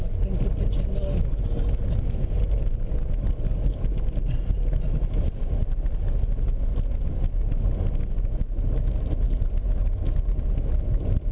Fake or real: real